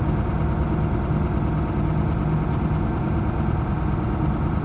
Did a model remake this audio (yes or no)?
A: no